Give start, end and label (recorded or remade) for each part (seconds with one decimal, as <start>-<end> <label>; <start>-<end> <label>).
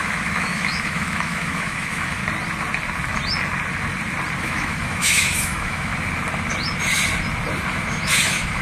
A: 0.0-2.2 remade; 2.2-4.4 recorded; 4.4-5.9 remade; 5.9-7.7 recorded; 7.7-8.6 remade